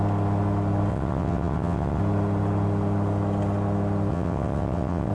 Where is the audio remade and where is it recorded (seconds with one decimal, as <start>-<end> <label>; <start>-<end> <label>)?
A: 0.0-0.9 recorded; 0.9-2.0 remade; 2.0-4.1 recorded; 4.1-5.1 remade